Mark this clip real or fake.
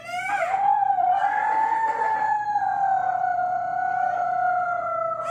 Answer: real